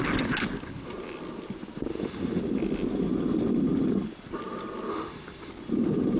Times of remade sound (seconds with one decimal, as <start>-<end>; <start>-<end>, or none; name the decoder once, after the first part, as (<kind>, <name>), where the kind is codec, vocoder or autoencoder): 1.9-2.4 (autoencoder, DAC-VAE); 4.9-5.5